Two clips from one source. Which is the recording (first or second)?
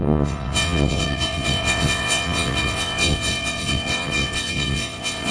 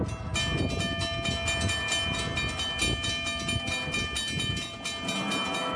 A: second